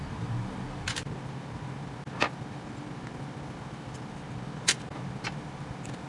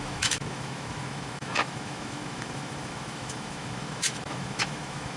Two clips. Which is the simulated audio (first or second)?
second